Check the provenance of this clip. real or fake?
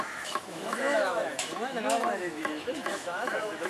fake